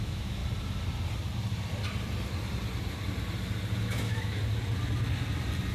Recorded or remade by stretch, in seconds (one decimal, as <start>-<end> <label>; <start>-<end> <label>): 0.0-0.4 remade; 0.4-3.8 recorded; 3.8-4.4 remade; 4.4-5.7 recorded